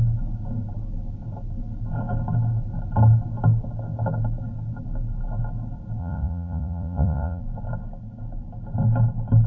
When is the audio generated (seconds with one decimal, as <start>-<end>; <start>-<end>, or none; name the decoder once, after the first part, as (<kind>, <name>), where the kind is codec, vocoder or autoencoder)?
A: 6.0-7.4 (vocoder, Vocos)